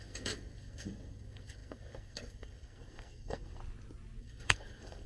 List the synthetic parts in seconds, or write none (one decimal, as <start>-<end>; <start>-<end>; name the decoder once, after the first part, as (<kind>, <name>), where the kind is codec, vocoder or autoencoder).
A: 0.0-3.6 (codec, SNAC); 4.2-5.1